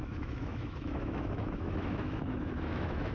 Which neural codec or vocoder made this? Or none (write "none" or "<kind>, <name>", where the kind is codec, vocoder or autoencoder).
autoencoder, DAC-VAE